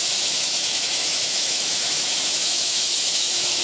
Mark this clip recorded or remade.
remade